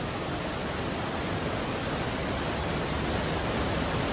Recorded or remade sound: recorded